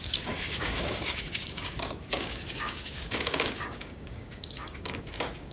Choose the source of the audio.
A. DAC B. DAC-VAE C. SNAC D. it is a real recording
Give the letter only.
A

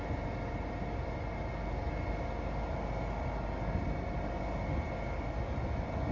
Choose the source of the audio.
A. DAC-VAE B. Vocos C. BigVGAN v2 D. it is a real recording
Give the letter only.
D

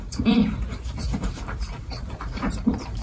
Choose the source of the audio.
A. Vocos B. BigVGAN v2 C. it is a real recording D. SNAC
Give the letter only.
B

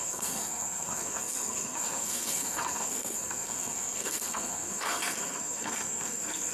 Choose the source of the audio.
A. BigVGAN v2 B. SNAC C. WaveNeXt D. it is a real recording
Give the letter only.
B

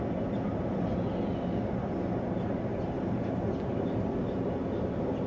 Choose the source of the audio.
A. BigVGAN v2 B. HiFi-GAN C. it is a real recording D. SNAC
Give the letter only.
C